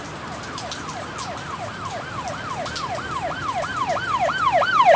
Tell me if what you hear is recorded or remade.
recorded